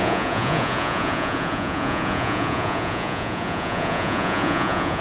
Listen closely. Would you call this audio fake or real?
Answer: fake